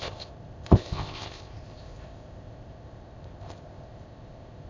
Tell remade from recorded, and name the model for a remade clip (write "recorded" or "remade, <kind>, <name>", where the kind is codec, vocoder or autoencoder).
remade, codec, ZipCodec